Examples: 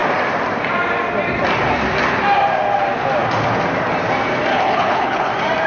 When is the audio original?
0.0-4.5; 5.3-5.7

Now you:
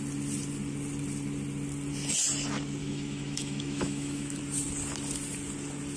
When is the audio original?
0.0-2.8; 4.4-6.0

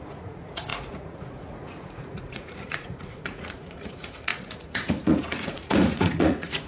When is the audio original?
none

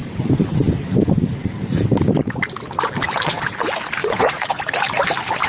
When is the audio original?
0.0-4.0; 4.6-5.5

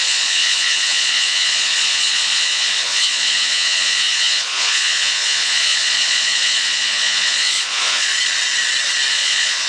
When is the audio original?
8.1-9.1

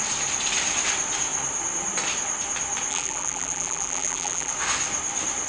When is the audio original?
0.0-2.9; 4.5-5.5

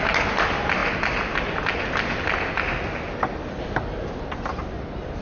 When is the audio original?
0.0-5.2

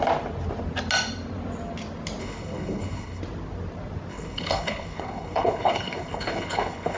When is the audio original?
0.0-2.2; 3.2-4.1